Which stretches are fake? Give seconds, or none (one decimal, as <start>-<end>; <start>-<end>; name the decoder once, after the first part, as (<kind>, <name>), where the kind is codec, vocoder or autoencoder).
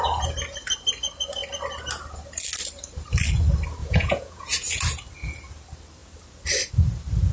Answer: 3.8-4.8 (vocoder, Vocos)